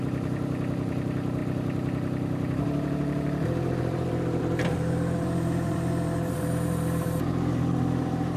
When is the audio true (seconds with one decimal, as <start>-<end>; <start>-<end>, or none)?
none